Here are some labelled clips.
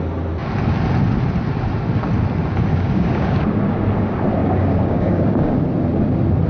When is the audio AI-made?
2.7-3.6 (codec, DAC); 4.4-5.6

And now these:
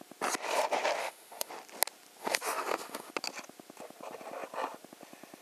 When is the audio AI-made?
1.0-1.5 (autoencoder, DAC-VAE); 2.2-3.1

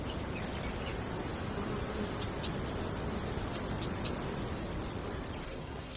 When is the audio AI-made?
5.4-6.0 (codec, SNAC)

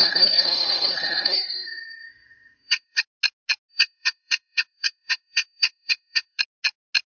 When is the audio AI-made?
0.0-3.0 (codec, SNAC); 3.7-6.4

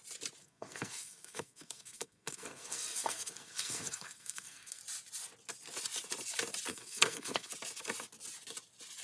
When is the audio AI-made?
0.4-4.8 (codec, SNAC); 6.7-7.5